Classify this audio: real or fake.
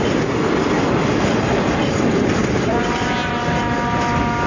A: real